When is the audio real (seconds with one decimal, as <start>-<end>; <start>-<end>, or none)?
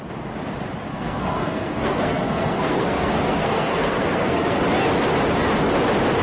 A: 0.0-0.9; 4.6-6.2